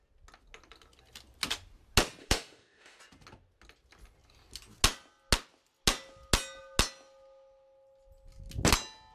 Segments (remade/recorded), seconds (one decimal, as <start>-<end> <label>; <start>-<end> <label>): 0.0-2.2 recorded; 2.2-3.0 remade; 3.0-9.1 recorded